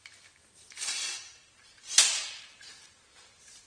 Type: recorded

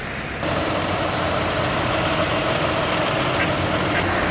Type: recorded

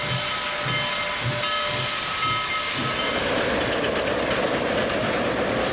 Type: recorded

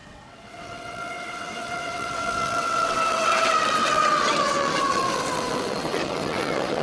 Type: remade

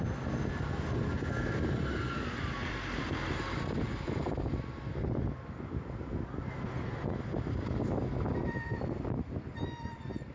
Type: recorded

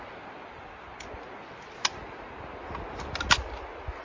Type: recorded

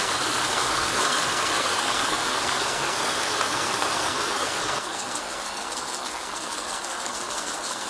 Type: remade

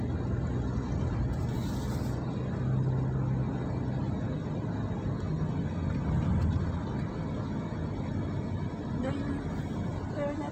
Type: recorded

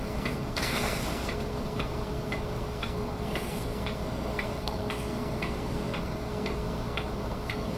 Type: remade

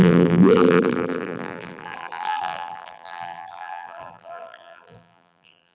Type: remade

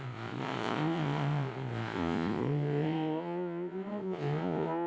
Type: remade